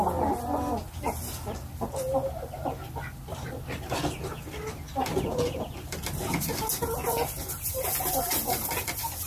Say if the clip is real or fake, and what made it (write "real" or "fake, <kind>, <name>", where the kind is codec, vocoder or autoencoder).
real